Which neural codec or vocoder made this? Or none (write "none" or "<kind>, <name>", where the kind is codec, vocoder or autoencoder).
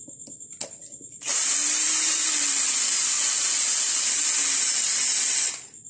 none